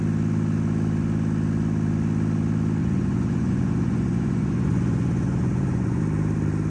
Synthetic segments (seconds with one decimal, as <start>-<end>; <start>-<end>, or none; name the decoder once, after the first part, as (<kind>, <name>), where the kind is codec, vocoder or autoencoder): 2.8-6.0 (vocoder, Vocos)